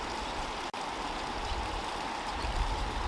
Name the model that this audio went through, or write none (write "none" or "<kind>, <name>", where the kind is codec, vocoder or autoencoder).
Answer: none